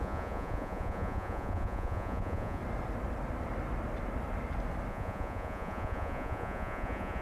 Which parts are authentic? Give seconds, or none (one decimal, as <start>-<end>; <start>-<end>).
2.6-4.9